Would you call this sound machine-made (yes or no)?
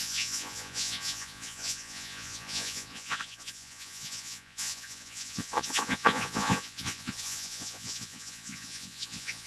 yes